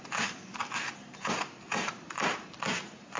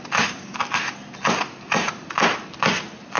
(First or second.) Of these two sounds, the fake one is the first